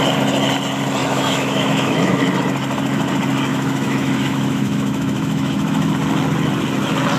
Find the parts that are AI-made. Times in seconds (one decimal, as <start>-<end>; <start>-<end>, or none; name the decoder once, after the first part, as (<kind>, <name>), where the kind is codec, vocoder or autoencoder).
1.0-2.2 (autoencoder, DAC-VAE); 3.5-5.9